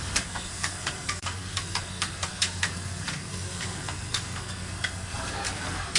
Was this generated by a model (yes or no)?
yes